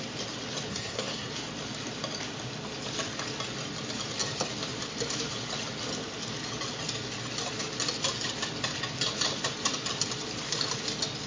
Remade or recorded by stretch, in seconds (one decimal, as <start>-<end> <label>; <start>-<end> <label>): 0.0-0.7 recorded; 0.7-1.3 remade; 1.3-11.3 recorded